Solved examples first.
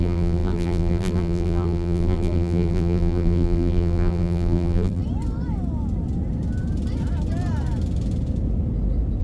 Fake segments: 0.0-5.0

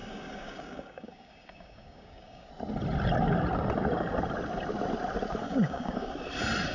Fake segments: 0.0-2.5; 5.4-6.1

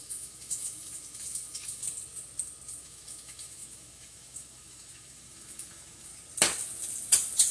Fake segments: 0.0-1.8; 2.8-6.1